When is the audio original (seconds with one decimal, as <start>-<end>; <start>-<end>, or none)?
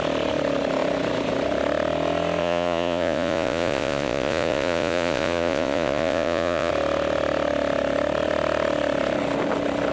0.0-2.4; 6.7-9.9